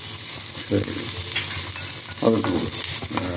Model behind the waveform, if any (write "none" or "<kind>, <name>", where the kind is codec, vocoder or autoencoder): none